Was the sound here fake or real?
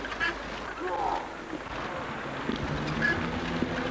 real